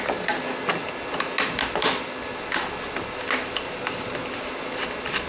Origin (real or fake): real